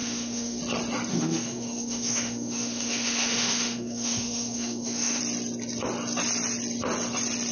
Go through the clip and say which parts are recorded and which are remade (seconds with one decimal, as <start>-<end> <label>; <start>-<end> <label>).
0.0-0.6 remade; 0.6-1.1 recorded; 1.1-5.2 remade; 5.2-7.5 recorded

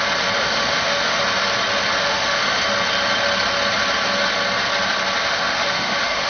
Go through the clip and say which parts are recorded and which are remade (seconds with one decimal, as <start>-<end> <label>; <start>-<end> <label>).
0.0-0.4 recorded; 0.4-1.2 remade; 1.2-2.0 recorded; 2.0-2.6 remade; 2.6-5.2 recorded; 5.2-6.3 remade

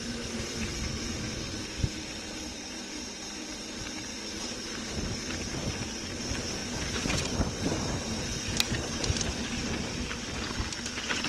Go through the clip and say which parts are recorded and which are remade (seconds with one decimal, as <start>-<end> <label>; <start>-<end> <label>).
0.0-6.6 recorded; 6.6-9.0 remade; 9.0-11.3 recorded

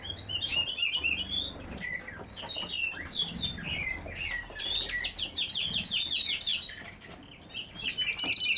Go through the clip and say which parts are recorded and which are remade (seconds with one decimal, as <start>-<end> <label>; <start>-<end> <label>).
0.0-8.6 recorded